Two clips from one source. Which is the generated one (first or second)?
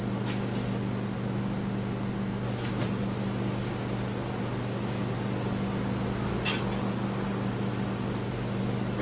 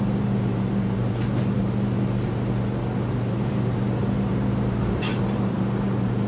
second